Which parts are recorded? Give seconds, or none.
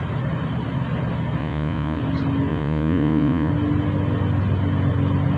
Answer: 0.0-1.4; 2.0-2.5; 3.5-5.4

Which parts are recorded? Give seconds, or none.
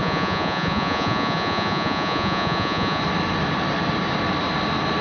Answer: 3.0-5.0